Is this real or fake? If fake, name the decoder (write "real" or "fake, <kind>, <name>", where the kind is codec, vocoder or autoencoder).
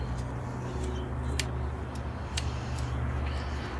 real